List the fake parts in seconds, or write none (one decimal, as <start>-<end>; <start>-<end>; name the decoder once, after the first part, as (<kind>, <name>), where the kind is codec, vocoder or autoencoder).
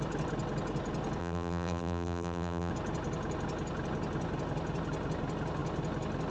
1.2-2.7 (vocoder, BigVGAN v2)